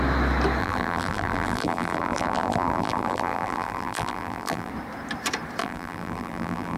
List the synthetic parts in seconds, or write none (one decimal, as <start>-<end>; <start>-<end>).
0.6-4.7; 5.6-6.8